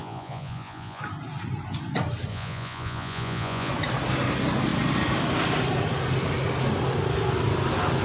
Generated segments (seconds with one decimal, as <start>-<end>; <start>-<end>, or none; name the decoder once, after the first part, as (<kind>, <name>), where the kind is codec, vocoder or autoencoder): 0.0-1.0 (vocoder, Vocos); 2.3-3.7